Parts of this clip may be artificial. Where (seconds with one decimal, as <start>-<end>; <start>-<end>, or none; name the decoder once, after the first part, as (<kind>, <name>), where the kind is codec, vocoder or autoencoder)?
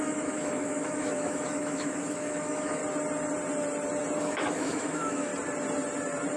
0.0-2.8 (autoencoder, DAC-VAE); 4.2-5.3